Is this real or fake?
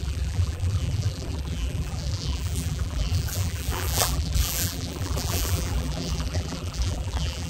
fake